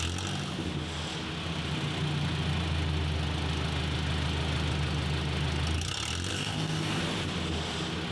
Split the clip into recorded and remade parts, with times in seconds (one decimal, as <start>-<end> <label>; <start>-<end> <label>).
0.0-6.3 recorded; 6.3-7.0 remade; 7.0-8.1 recorded